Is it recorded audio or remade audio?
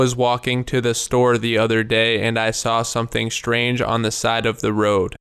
remade